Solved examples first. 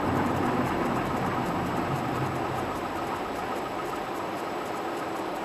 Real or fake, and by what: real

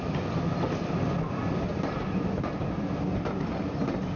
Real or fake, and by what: real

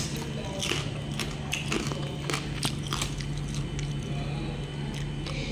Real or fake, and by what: real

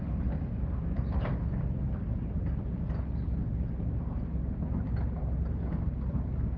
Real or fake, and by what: real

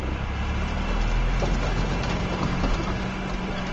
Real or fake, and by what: real